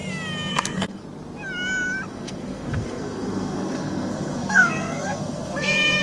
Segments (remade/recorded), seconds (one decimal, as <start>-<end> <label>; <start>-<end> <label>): 0.0-0.5 recorded; 0.5-1.0 remade; 1.0-2.1 recorded; 2.1-6.0 remade

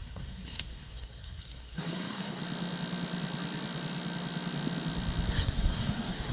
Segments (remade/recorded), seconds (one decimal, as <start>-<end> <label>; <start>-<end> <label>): 0.0-2.4 remade; 2.4-5.3 recorded; 5.3-6.3 remade

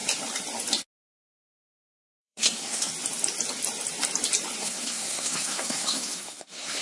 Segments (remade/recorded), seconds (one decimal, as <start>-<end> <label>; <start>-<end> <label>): 0.0-2.2 recorded; 2.2-2.9 remade; 2.9-4.6 recorded; 4.6-6.8 remade